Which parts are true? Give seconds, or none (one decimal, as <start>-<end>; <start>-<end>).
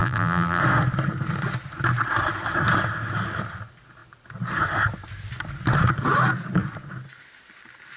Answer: 0.6-8.0